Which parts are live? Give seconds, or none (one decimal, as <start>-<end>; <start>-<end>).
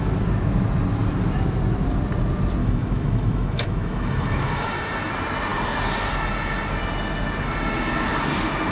0.0-2.6; 4.7-8.7